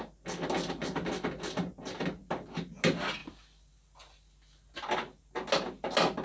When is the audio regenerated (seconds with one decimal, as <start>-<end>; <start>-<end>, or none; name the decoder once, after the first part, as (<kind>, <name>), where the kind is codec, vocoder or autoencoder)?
none

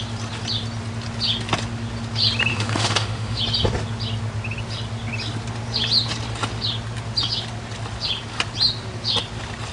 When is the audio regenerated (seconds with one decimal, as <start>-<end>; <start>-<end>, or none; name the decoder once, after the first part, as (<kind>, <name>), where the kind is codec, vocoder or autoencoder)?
2.5-3.4 (autoencoder, DAC-VAE)